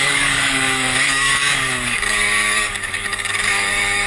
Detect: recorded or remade remade